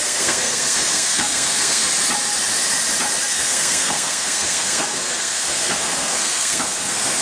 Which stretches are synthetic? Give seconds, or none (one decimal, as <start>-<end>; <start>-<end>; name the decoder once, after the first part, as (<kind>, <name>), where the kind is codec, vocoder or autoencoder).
0.0-1.8 (codec, SNAC); 3.3-7.2